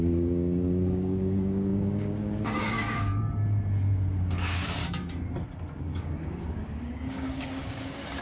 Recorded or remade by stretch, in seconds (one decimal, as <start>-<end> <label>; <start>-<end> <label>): 0.0-3.1 remade; 3.1-4.2 recorded; 4.2-4.8 remade; 4.8-5.8 recorded; 5.8-8.2 remade